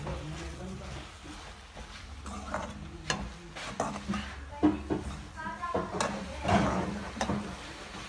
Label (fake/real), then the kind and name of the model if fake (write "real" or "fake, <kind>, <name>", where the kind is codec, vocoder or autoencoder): real